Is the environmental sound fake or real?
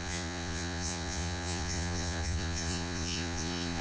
fake